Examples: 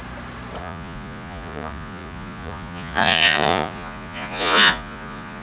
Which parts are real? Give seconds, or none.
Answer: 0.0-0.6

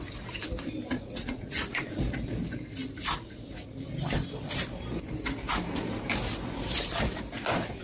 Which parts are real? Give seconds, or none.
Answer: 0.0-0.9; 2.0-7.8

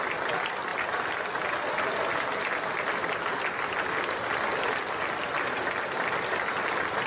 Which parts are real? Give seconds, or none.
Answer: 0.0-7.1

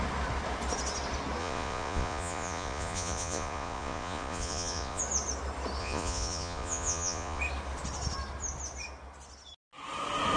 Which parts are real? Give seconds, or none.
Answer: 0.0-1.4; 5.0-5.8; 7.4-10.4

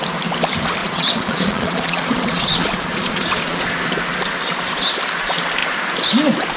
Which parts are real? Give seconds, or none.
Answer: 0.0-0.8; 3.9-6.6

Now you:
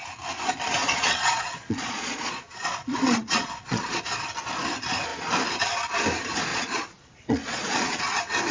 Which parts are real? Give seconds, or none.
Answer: 0.0-0.8; 4.0-6.5; 8.0-8.5

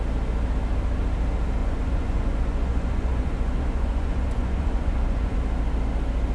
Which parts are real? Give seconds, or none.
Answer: 0.0-1.6; 5.4-6.3